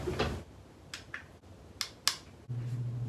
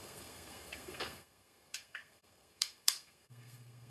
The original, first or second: first